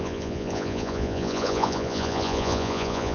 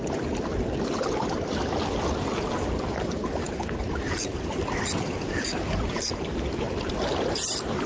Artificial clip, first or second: first